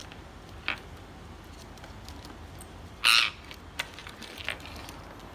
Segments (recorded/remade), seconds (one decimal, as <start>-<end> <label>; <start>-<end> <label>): 0.0-5.3 recorded